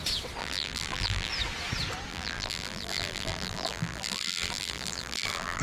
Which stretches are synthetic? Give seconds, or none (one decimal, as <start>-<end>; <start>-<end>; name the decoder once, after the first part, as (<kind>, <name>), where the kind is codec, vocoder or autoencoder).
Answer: 0.4-1.3 (vocoder, BigVGAN v2); 2.1-5.6